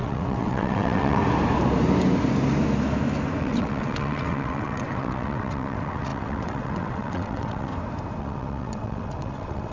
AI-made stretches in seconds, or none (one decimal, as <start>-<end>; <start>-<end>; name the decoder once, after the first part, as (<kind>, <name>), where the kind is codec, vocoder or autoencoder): 0.0-1.2 (vocoder, WaveNeXt); 3.4-7.7; 8.2-9.7